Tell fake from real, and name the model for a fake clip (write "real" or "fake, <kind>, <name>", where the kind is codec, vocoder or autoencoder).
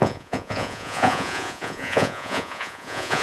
fake, vocoder, Vocos